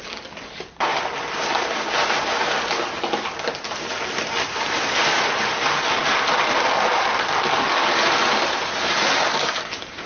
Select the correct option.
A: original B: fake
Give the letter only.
A